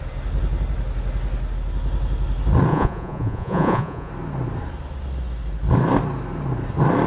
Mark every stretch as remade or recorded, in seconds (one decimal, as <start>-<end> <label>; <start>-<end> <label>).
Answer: 0.0-2.7 recorded; 2.7-4.1 remade; 4.1-7.1 recorded